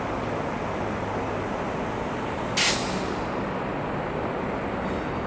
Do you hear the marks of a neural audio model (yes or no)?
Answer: no